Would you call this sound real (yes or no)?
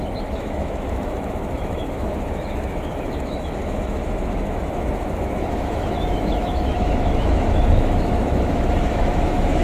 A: no